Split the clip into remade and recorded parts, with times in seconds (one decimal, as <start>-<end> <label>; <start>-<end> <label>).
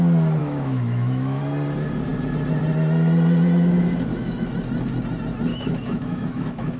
0.0-0.4 recorded; 0.4-1.4 remade; 1.4-5.5 recorded; 5.5-6.8 remade